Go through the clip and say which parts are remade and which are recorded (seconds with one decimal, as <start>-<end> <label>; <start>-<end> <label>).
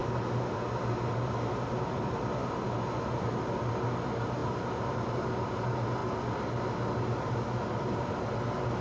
0.0-8.8 recorded